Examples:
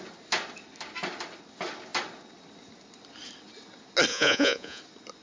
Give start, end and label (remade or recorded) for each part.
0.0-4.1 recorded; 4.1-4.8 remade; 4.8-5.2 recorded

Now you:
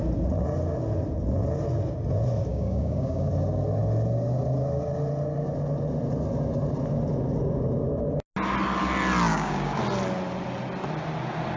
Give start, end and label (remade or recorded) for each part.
0.0-2.5 recorded; 2.5-3.3 remade; 3.3-9.3 recorded; 9.3-9.8 remade; 9.8-11.6 recorded

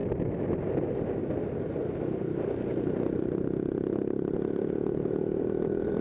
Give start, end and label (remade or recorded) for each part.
0.0-6.0 recorded

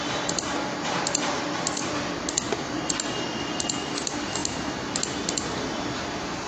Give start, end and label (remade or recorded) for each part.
0.0-6.5 recorded